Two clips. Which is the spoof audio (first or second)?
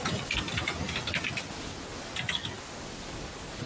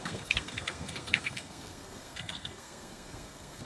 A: second